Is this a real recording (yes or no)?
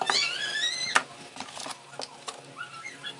yes